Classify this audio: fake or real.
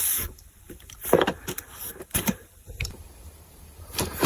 fake